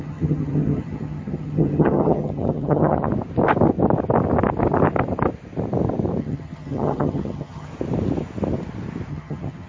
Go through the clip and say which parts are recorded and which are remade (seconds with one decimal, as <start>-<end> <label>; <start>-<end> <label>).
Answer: 0.0-3.1 remade; 3.1-6.2 recorded; 6.2-7.7 remade; 7.7-9.1 recorded; 9.1-9.7 remade